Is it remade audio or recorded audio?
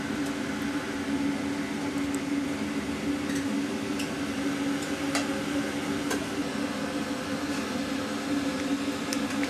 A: recorded